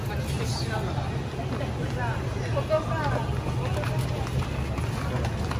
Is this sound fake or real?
real